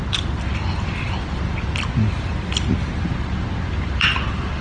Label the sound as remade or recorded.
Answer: recorded